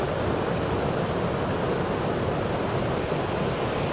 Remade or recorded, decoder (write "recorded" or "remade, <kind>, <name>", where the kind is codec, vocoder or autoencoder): recorded